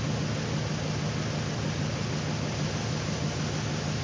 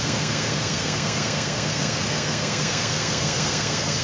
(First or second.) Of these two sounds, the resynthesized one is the second